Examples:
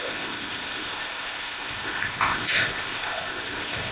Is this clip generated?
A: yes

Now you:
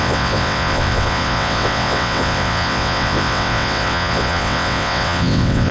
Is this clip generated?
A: yes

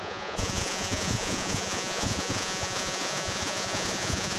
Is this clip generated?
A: yes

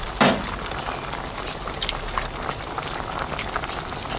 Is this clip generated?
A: no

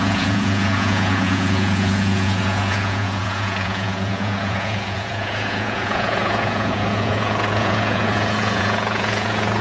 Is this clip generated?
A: yes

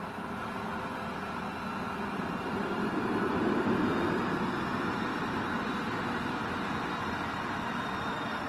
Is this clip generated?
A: yes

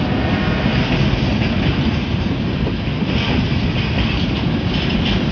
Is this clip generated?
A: no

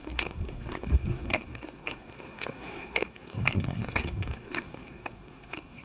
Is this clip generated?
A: yes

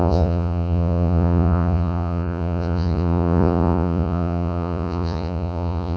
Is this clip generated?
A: yes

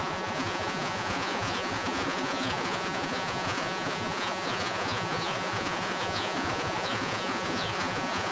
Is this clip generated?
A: yes